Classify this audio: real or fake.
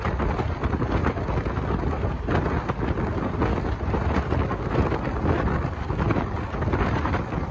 real